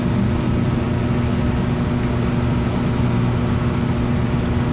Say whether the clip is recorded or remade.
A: recorded